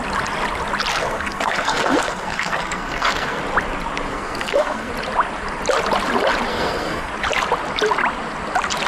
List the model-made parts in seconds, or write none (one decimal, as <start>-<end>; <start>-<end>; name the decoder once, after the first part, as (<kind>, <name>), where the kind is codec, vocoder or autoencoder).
0.9-3.4 (codec, SNAC); 4.1-4.9; 6.5-7.1